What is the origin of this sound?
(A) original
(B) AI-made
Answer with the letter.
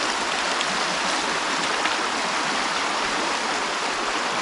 A